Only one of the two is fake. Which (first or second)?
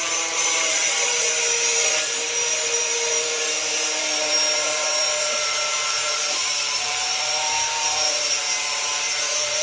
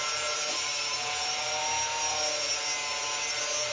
first